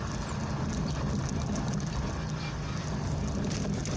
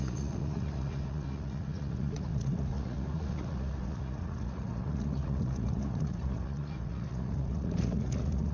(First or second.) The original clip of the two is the first